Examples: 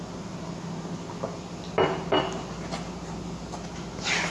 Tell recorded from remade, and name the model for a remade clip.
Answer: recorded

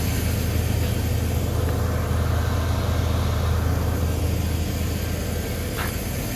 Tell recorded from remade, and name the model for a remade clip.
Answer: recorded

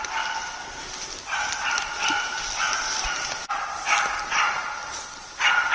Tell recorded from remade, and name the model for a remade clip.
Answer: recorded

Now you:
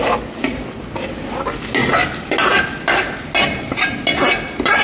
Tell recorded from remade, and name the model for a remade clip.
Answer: recorded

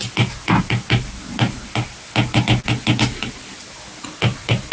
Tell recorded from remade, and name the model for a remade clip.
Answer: recorded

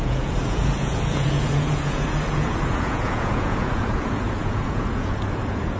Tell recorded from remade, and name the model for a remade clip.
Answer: remade, vocoder, Vocos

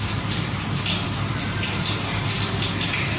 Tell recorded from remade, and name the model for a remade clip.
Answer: recorded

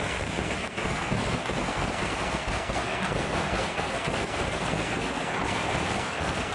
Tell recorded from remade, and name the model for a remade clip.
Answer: remade, codec, SNAC